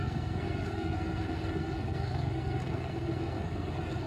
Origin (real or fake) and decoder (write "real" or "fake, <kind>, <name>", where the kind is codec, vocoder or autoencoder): fake, codec, SNAC